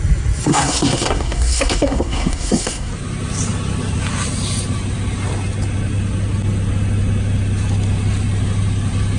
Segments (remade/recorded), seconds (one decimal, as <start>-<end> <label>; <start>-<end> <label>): 0.0-0.5 recorded; 0.5-2.9 remade; 2.9-9.2 recorded